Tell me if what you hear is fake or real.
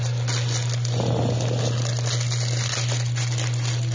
real